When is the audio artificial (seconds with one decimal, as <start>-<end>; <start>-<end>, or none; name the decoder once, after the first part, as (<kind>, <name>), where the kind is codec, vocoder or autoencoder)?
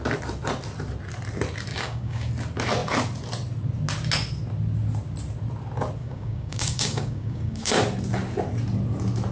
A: 1.7-2.3 (codec, DAC); 6.0-7.8